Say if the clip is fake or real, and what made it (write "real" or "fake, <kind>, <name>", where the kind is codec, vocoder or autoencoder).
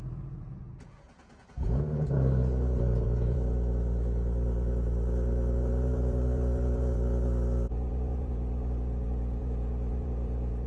fake, vocoder, Vocos